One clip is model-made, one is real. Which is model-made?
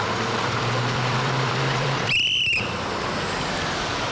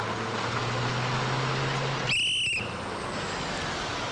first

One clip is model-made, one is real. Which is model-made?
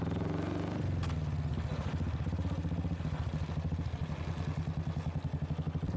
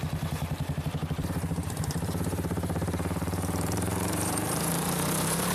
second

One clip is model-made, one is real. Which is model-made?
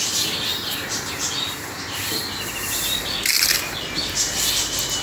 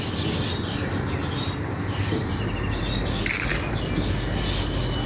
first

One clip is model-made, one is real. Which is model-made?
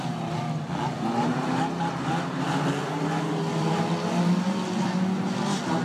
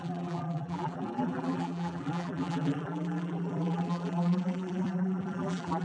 second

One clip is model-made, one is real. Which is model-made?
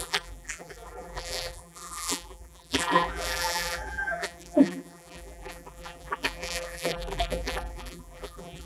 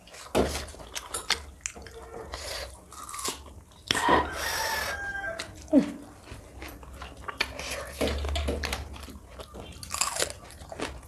first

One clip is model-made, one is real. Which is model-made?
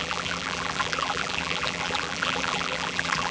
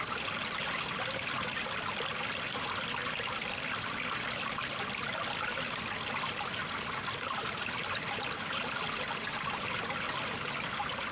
first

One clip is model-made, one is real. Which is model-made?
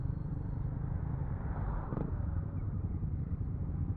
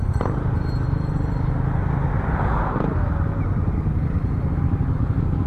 first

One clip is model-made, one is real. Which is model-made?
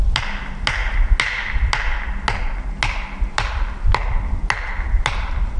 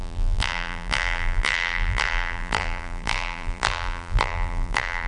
second